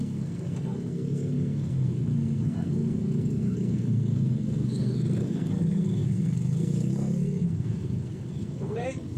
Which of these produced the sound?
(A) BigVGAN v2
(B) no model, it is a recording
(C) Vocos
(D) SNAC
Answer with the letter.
D